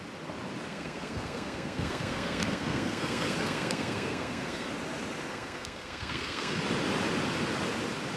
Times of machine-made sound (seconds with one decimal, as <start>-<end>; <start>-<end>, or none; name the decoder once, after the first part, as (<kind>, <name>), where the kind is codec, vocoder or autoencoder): 0.7-4.7 (codec, SNAC); 5.3-6.6